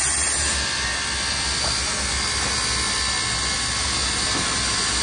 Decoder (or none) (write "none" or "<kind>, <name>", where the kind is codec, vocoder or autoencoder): none